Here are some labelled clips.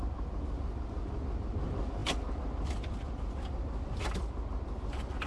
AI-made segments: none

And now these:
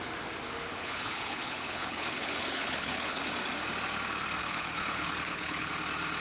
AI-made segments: 0.7-3.2 (codec, HILCodec); 4.4-5.7

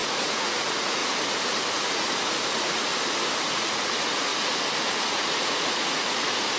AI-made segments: 0.0-1.0 (vocoder, Vocos); 1.7-2.9; 3.5-4.3; 5.0-6.6

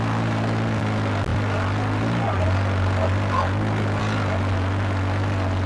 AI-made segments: none

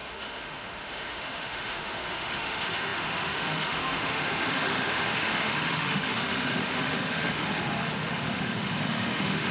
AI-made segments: 0.0-9.5 (autoencoder, DAC-VAE)

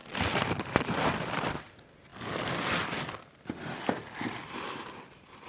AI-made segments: 0.0-5.5 (vocoder, BigVGAN v2)